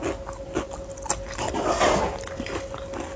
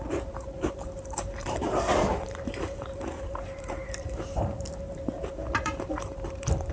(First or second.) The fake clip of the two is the second